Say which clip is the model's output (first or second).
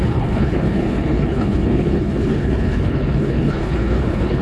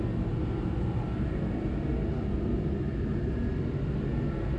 first